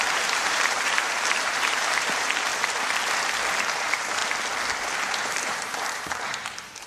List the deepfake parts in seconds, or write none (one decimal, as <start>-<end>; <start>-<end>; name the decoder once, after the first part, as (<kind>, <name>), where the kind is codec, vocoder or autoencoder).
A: 0.0-2.5 (vocoder, BigVGAN v2); 3.6-4.2; 4.9-6.9